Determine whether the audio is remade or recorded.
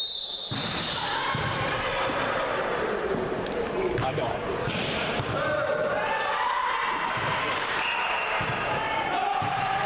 remade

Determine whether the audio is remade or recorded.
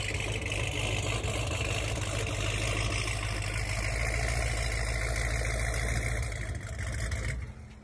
recorded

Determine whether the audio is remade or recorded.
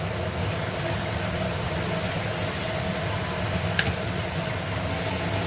recorded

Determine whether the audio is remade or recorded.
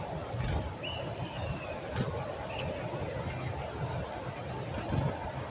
recorded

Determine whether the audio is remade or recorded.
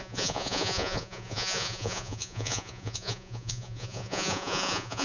remade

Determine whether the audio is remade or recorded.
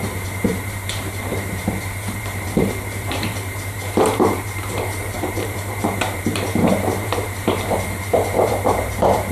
remade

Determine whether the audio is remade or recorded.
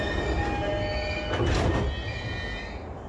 recorded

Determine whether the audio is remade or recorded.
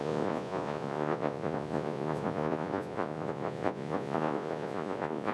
remade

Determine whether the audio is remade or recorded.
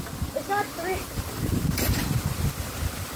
recorded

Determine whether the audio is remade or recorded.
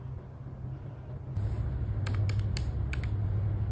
recorded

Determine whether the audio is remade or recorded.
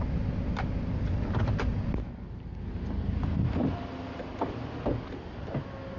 recorded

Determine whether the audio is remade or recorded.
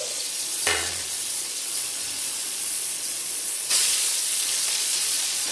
remade